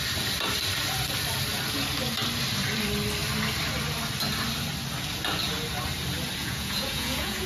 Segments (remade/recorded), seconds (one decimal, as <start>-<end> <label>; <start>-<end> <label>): 0.0-6.4 recorded; 6.4-7.5 remade